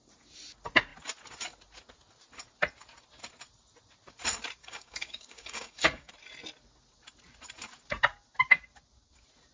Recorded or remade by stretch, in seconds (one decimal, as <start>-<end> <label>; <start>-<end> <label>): 0.0-4.6 recorded; 4.6-6.1 remade; 6.1-9.5 recorded